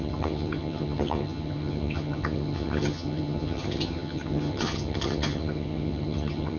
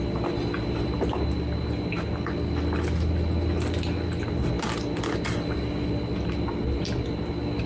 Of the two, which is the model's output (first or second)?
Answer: first